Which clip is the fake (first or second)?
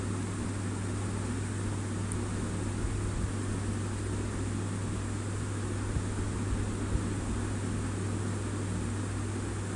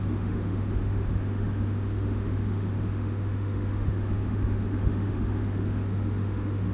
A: second